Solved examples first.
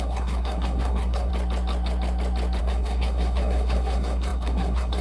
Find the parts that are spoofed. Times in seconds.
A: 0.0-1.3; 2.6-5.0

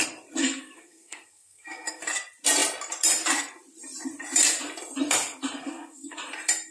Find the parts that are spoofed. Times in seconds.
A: 0.4-2.0; 5.6-6.2

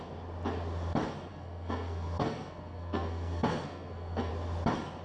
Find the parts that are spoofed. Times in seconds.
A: 1.3-4.3